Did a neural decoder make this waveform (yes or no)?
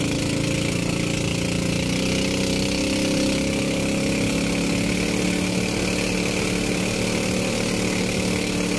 no